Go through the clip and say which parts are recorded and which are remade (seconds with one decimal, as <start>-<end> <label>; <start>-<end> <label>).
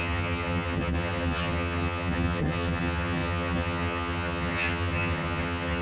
0.0-5.8 remade